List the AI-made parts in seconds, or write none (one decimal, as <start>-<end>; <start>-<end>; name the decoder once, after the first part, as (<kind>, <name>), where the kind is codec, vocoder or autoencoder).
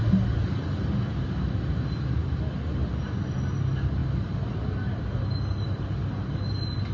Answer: none